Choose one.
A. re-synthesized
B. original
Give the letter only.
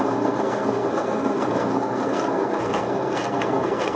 A